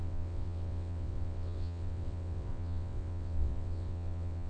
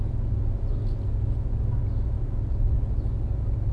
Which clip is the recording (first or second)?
second